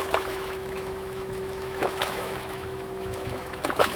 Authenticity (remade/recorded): remade